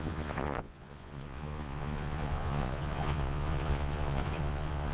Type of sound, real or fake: fake